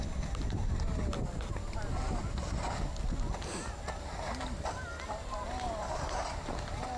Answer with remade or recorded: recorded